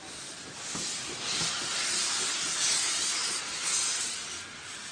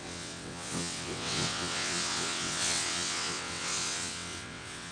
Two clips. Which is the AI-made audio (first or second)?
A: second